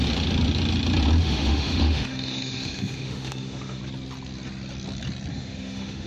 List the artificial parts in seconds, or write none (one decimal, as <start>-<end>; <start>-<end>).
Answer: 1.2-3.8; 5.3-6.1